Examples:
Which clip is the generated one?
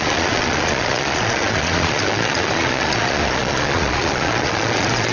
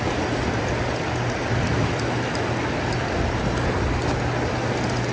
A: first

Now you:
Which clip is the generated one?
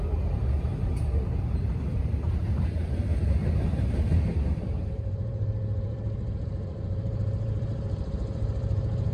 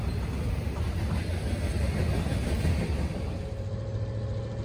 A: first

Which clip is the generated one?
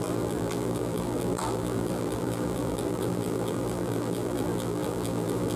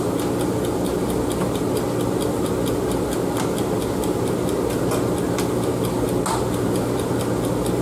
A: first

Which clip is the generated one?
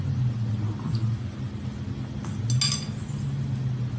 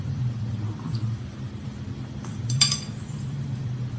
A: second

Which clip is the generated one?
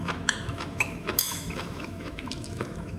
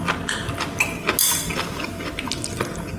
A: first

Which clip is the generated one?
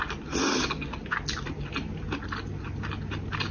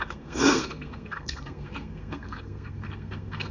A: second